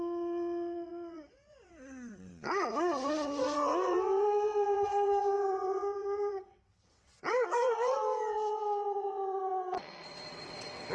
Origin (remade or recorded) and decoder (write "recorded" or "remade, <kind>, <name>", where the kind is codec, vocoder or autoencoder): remade, vocoder, WaveNeXt